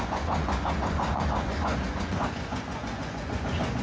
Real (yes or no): no